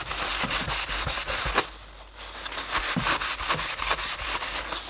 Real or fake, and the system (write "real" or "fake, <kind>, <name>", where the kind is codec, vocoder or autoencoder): real